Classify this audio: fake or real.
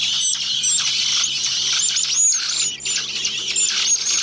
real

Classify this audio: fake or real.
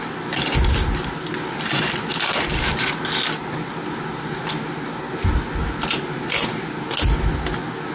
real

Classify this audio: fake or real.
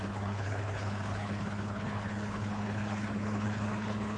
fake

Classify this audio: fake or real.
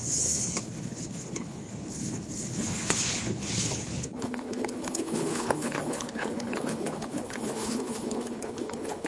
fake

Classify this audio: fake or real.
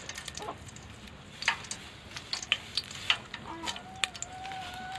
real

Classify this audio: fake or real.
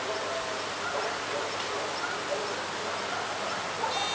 real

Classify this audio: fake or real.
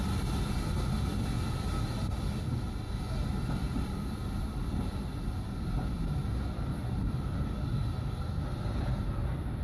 real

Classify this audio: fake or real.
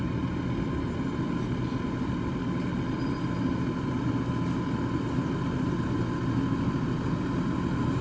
real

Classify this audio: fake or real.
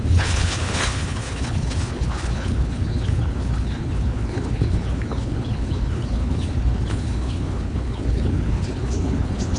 fake